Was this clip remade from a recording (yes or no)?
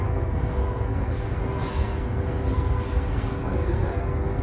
yes